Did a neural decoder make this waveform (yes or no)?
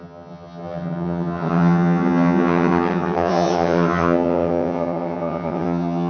yes